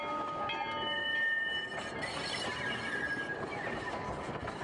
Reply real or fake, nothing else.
real